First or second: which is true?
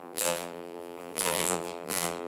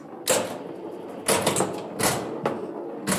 second